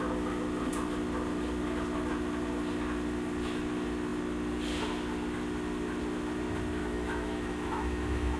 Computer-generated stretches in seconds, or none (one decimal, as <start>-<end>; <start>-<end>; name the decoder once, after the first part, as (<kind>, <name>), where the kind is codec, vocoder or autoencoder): 6.8-8.4 (autoencoder, DAC-VAE)